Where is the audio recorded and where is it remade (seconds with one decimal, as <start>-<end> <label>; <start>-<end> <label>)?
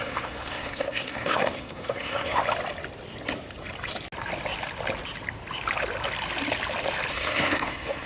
0.0-2.4 remade; 2.4-7.1 recorded; 7.1-8.1 remade